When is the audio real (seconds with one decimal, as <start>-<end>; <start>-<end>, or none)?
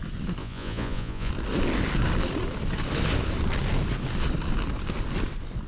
0.0-0.4; 1.3-5.7